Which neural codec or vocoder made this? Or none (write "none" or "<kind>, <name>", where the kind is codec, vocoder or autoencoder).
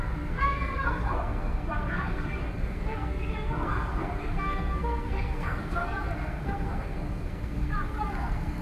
codec, SNAC